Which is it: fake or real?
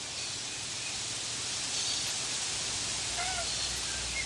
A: real